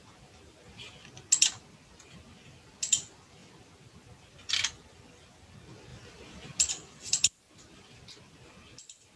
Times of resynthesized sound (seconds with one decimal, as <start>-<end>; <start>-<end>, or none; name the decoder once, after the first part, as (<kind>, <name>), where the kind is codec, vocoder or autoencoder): none